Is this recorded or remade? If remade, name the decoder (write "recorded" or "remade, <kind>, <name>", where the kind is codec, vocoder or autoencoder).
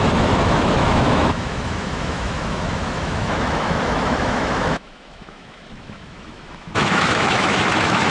remade, autoencoder, DAC-VAE